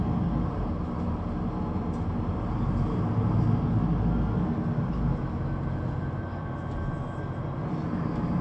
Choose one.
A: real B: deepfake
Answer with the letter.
A